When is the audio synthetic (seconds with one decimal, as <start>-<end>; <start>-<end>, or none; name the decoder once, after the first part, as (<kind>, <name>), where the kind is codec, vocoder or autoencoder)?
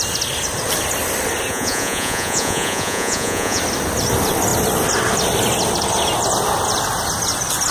1.5-3.6 (vocoder, Vocos)